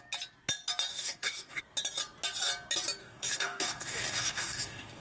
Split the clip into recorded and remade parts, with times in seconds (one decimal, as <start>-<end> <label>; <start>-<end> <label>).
0.0-0.9 recorded; 0.9-1.6 remade; 1.6-3.0 recorded; 3.0-5.0 remade